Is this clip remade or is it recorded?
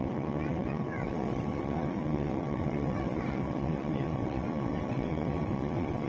remade